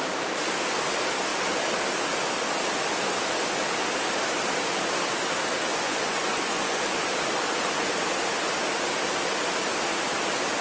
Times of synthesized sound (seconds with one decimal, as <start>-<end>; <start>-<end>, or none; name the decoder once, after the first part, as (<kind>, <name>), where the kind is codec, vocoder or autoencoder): 5.7-7.1 (vocoder, Vocos)